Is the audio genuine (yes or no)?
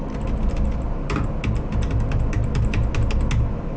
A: yes